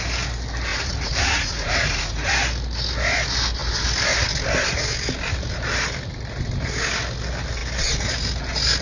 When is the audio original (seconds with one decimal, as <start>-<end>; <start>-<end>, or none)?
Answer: 0.0-0.7; 2.3-8.8